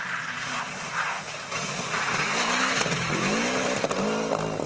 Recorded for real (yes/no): yes